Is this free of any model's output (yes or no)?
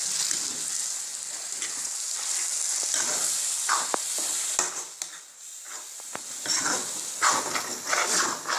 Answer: yes